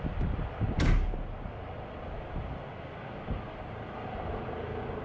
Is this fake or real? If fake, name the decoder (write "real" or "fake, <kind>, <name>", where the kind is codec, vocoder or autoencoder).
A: real